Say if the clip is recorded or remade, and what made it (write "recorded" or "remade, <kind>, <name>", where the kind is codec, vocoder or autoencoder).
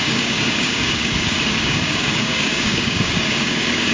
remade, codec, DAC